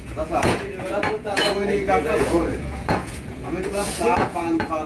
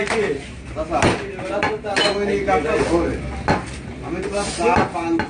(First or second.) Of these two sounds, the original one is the second